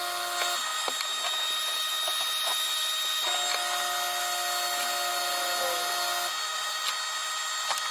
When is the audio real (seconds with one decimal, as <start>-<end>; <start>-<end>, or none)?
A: 0.0-7.9